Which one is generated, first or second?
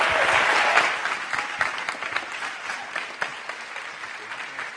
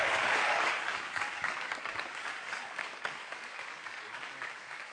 second